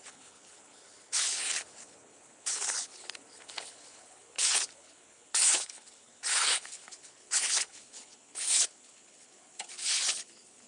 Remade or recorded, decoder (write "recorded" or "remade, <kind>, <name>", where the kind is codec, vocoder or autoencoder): remade, codec, HILCodec